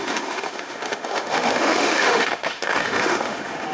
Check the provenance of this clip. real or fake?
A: fake